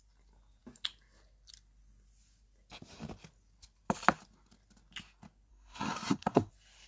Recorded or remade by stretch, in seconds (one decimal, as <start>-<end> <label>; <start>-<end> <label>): 0.0-5.5 recorded; 5.5-6.5 remade; 6.5-6.9 recorded